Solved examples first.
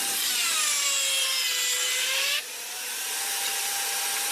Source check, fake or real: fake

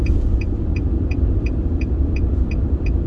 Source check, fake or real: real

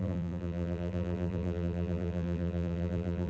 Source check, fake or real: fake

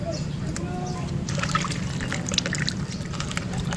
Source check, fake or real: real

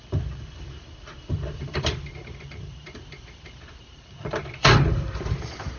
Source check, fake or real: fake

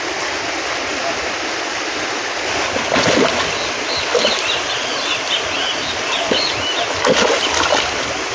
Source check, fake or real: real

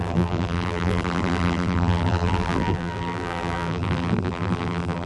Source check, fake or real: fake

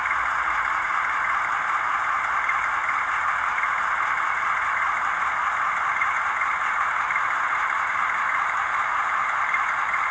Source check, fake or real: fake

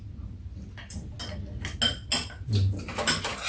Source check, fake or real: real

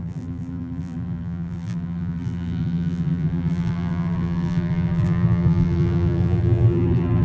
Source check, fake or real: fake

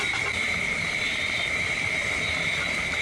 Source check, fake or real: fake